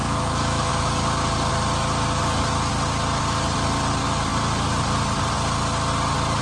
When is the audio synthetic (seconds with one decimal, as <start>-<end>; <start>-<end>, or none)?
0.0-0.9